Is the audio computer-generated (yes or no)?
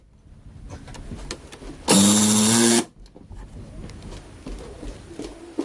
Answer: no